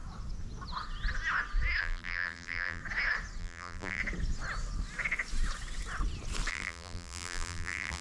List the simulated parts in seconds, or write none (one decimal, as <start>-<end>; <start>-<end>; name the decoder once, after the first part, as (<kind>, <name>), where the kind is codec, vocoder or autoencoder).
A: 1.8-2.8 (vocoder, BigVGAN v2); 3.4-4.0; 6.5-8.0